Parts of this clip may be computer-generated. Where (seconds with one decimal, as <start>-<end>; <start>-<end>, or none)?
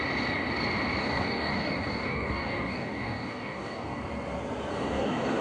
1.0-4.0; 4.7-5.4